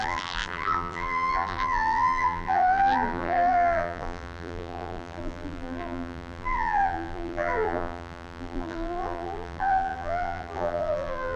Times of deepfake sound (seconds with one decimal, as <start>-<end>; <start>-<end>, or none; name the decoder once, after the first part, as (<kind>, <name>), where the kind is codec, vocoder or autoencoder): 0.0-11.4 (vocoder, BigVGAN v2)